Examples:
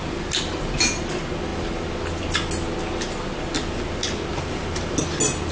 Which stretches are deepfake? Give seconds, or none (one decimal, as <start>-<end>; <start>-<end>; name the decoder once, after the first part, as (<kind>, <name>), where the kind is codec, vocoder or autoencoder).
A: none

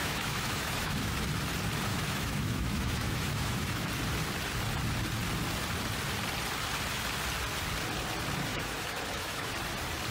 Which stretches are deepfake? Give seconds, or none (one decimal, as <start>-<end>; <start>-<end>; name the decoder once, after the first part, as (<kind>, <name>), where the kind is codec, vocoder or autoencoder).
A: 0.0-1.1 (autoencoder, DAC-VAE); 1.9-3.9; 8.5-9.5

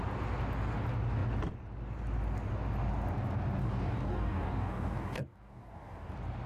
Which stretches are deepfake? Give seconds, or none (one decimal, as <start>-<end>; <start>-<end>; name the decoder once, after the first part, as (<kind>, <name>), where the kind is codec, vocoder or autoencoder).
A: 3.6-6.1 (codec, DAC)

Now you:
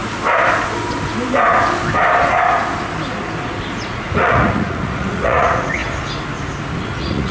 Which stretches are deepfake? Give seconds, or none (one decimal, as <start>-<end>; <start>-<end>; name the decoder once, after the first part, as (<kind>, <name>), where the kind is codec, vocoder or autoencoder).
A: 3.7-5.8 (vocoder, Vocos); 6.8-7.3